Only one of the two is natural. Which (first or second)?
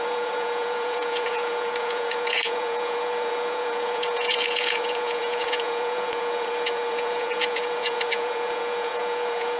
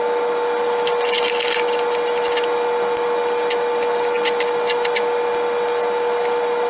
second